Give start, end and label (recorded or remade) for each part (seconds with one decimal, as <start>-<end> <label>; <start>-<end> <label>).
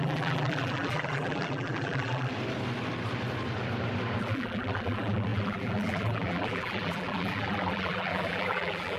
0.0-2.3 remade; 2.3-4.2 recorded; 4.2-9.0 remade